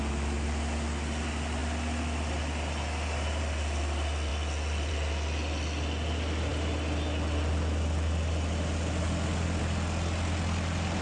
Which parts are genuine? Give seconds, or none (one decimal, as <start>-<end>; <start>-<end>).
0.0-11.0